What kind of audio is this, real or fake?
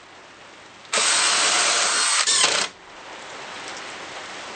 real